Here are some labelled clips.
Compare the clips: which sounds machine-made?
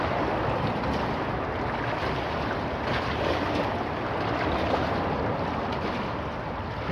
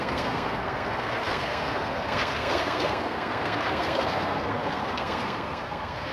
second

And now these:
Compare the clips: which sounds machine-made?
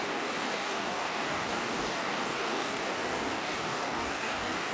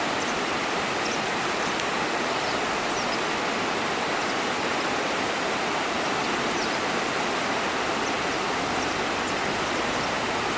first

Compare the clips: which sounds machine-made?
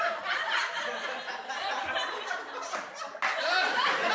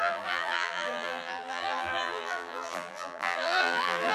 second